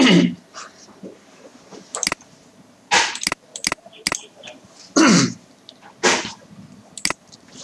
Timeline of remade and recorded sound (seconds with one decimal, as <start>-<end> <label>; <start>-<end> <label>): 0.0-7.6 recorded